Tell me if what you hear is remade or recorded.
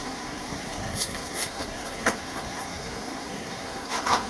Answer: remade